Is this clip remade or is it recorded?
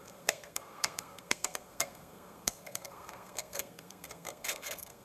remade